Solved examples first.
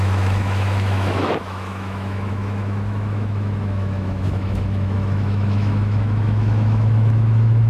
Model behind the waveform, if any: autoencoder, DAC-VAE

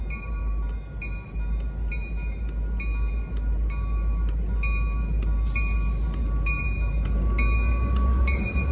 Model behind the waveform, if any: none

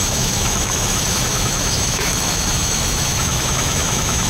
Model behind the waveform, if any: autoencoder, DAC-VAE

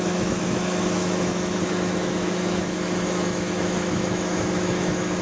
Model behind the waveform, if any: autoencoder, DAC-VAE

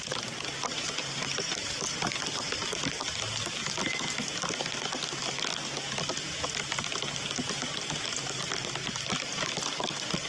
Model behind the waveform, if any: none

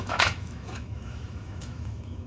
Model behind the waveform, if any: autoencoder, DAC-VAE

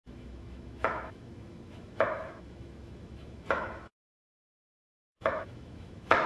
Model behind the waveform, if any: autoencoder, DAC-VAE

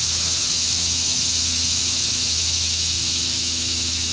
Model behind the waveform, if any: autoencoder, DAC-VAE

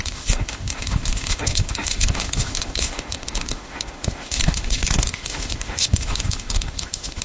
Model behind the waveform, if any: autoencoder, DAC-VAE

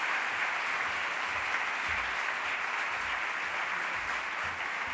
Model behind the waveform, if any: none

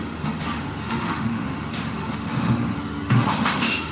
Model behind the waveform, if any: autoencoder, DAC-VAE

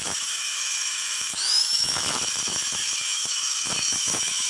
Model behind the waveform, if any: autoencoder, DAC-VAE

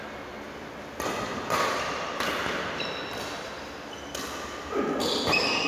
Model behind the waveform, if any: none